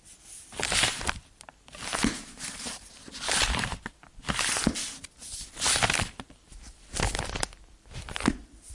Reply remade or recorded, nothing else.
remade